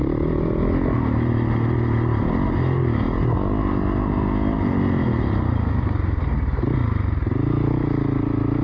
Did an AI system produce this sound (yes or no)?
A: no